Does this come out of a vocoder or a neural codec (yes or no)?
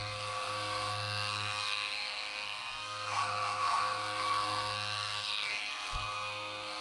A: yes